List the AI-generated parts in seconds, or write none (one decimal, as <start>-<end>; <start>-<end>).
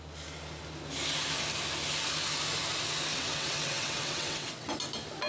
3.1-4.7